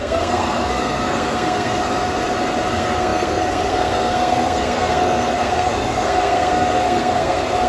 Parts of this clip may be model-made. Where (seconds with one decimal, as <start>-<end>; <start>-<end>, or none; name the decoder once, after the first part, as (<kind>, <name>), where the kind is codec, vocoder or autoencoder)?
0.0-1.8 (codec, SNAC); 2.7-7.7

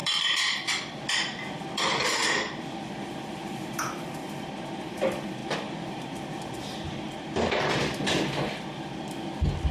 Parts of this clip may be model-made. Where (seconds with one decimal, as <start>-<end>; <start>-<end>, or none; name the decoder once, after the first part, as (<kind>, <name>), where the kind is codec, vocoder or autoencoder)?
0.0-9.7 (vocoder, BigVGAN v2)

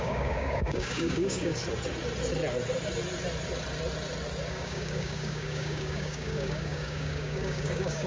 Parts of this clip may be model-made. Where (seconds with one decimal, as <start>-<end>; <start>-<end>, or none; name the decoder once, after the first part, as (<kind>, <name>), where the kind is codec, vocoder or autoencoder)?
0.0-1.6 (codec, DAC); 4.5-8.1